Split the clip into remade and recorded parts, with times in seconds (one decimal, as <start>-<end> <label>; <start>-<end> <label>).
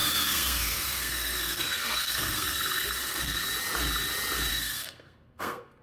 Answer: 0.0-3.5 remade; 3.5-4.5 recorded; 4.5-5.8 remade